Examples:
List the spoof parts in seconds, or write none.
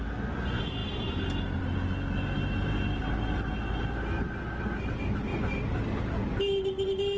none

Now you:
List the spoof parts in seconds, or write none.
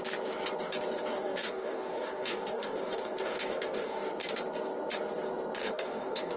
1.1-4.1 (codec, DAC); 5.6-6.4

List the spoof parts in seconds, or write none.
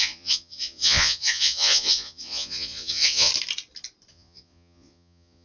0.0-3.3 (vocoder, Vocos); 4.1-5.4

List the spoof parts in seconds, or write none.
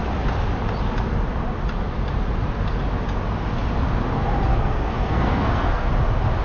4.5-5.9 (codec, SNAC)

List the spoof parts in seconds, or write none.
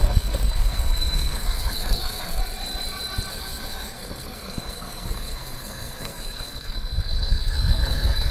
0.0-2.4 (codec, SNAC); 3.3-8.3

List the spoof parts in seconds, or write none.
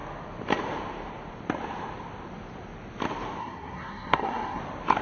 3.4-4.6 (codec, SNAC)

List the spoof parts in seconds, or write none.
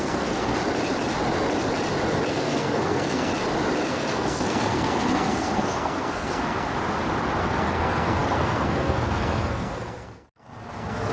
0.0-0.6 (codec, SNAC); 2.3-3.3; 3.9-6.7; 7.4-11.1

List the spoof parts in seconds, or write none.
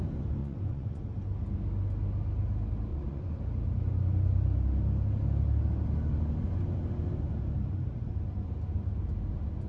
0.4-1.0 (vocoder, Vocos); 2.9-3.4